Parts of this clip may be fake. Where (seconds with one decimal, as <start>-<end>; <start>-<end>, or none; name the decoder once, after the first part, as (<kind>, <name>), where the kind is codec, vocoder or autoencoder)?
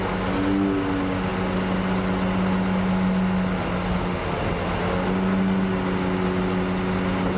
none